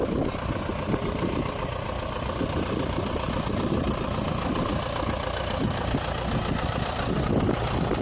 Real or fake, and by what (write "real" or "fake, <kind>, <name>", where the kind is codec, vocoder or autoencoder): fake, vocoder, BigVGAN v2